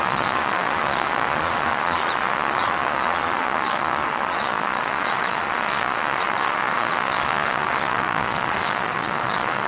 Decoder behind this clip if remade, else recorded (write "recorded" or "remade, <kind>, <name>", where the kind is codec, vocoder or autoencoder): remade, vocoder, Vocos